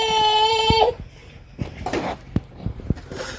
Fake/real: fake